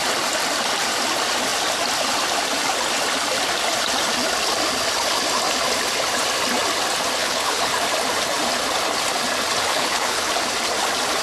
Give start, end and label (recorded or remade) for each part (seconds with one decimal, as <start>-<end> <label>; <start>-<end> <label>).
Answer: 0.0-7.2 recorded; 7.2-7.7 remade; 7.7-9.7 recorded; 9.7-10.3 remade; 10.3-11.2 recorded